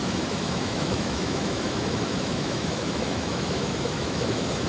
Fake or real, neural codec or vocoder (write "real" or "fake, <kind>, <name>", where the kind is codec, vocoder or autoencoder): fake, autoencoder, DAC-VAE